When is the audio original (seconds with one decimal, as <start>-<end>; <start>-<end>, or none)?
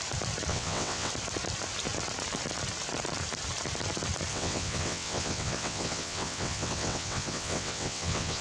0.0-0.5; 1.1-4.3